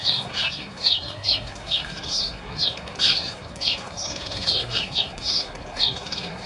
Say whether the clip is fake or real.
fake